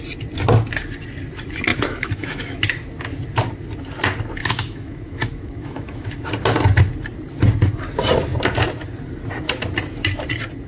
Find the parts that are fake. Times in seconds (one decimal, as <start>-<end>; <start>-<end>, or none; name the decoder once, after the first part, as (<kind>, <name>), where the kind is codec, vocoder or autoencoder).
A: 1.7-2.7 (autoencoder, DAC-VAE); 4.4-6.3